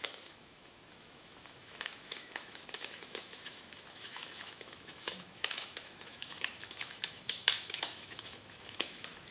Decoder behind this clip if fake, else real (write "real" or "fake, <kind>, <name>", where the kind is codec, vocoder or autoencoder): fake, autoencoder, DAC-VAE